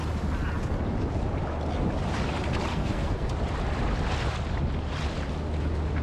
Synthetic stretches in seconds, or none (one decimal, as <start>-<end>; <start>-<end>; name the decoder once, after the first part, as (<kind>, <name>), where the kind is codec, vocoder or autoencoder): 2.7-3.3 (codec, SNAC)